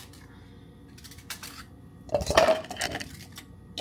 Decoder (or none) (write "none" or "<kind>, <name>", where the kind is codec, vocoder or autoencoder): none